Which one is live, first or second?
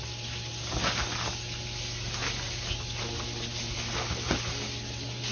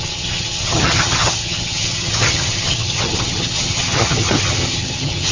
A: first